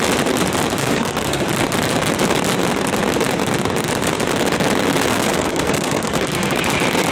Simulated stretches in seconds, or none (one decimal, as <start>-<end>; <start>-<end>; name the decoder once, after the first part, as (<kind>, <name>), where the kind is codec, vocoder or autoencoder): 0.8-1.4 (codec, SNAC); 5.1-6.6